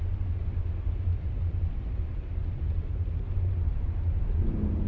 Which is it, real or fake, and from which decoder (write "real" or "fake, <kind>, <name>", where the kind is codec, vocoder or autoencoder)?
real